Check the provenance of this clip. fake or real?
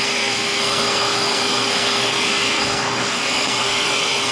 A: fake